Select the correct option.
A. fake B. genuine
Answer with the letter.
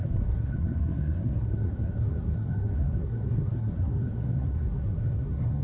A